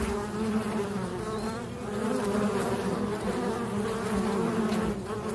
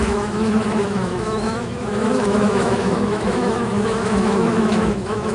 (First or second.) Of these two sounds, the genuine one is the first